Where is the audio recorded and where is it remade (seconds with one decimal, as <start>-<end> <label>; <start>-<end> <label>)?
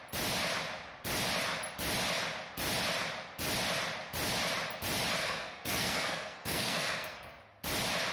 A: 0.0-5.2 recorded; 5.2-7.4 remade; 7.4-8.1 recorded